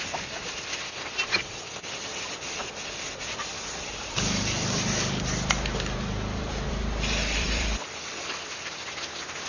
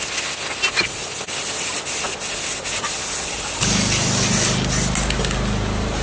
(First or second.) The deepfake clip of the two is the first